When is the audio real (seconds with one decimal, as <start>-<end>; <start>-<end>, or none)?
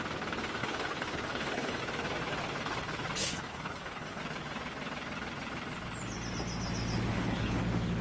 0.0-0.6; 1.8-3.2; 4.2-7.1; 7.6-8.0